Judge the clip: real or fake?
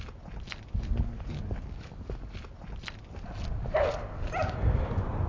real